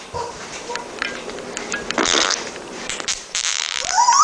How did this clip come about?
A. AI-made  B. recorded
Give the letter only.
A